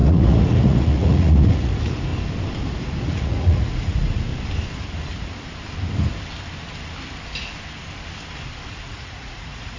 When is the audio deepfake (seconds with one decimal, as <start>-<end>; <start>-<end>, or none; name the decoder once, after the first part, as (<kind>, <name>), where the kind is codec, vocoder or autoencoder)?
0.0-2.1 (vocoder, Vocos); 2.6-4.3; 8.7-9.8